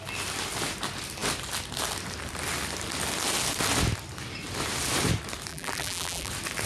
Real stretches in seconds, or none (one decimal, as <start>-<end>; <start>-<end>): 0.0-5.5; 6.3-6.7